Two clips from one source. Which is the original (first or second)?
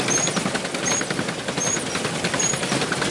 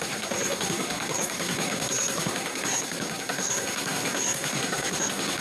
first